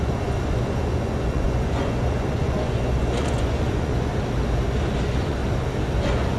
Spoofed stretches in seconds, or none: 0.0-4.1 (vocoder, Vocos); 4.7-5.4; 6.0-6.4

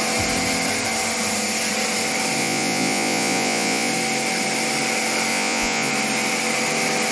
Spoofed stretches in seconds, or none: 2.4-3.9 (vocoder, Vocos); 5.3-5.9

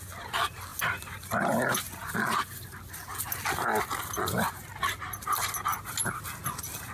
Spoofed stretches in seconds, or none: none